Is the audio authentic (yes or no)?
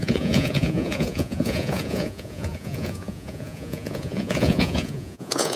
no